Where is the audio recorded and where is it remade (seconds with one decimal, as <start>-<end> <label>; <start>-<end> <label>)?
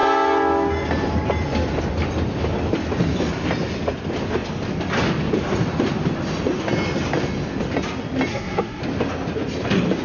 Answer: 0.0-8.3 recorded; 8.3-8.8 remade; 8.8-10.0 recorded